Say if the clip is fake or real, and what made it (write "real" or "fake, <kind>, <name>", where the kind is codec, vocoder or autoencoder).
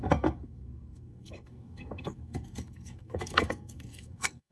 fake, codec, SNAC